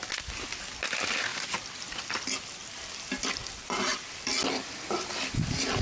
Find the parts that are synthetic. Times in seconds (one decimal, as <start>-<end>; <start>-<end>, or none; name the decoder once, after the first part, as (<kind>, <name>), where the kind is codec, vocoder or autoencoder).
none